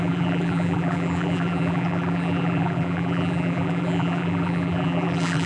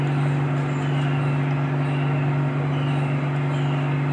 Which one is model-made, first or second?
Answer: first